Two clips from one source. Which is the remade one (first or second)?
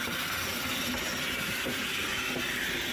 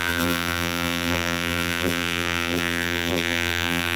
second